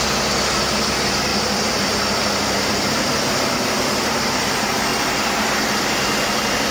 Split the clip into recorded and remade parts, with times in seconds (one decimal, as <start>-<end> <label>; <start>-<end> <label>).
0.0-1.3 recorded; 1.3-4.4 remade; 4.4-4.9 recorded; 4.9-5.8 remade; 5.8-6.7 recorded